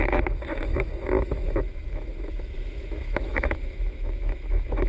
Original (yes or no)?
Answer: no